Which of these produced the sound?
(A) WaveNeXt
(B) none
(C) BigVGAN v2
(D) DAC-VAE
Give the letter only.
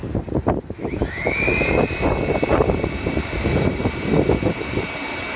C